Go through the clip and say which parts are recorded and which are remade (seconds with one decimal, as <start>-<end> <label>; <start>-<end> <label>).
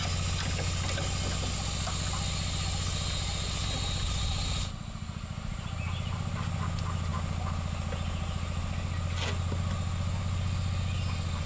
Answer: 0.0-11.5 recorded